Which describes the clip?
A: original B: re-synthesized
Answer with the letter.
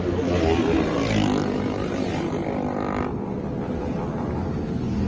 A